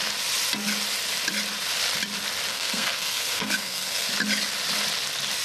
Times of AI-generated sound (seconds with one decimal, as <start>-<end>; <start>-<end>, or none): 2.5-4.1